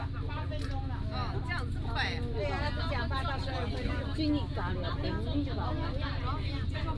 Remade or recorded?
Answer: recorded